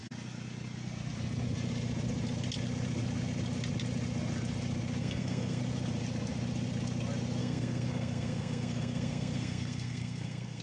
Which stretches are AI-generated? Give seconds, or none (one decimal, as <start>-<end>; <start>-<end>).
5.0-5.6; 7.4-10.6